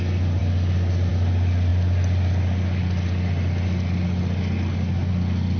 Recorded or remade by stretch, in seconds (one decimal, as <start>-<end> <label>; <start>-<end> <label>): 0.0-5.6 recorded